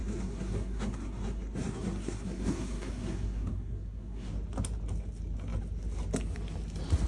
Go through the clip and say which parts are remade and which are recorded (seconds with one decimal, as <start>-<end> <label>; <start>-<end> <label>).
0.0-4.3 remade; 4.3-7.1 recorded